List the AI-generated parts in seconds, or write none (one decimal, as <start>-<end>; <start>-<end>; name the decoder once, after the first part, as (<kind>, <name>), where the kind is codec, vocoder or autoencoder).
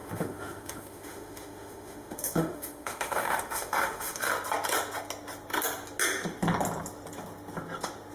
0.0-4.3 (autoencoder, DAC-VAE)